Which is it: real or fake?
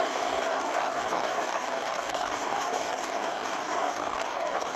fake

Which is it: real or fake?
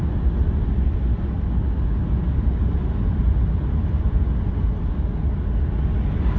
real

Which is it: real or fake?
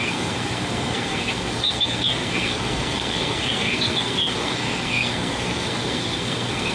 fake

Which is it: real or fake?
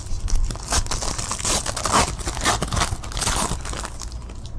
real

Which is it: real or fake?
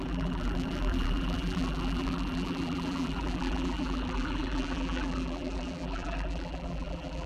fake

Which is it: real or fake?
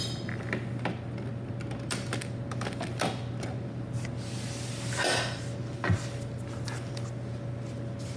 real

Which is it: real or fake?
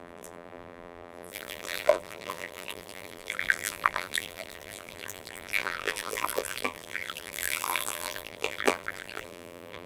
fake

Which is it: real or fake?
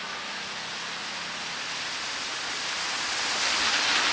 real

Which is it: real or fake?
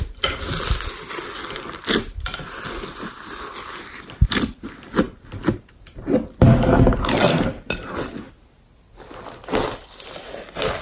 real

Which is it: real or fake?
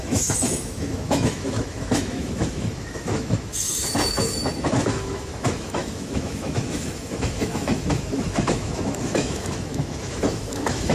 fake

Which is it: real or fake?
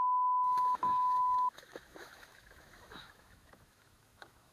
fake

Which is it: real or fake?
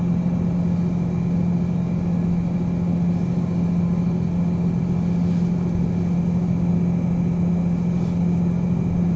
real